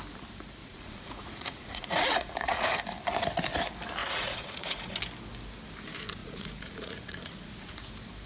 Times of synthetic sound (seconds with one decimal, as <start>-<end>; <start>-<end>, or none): 0.6-2.8; 4.0-5.0; 6.2-7.9